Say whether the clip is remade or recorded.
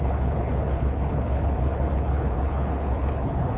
remade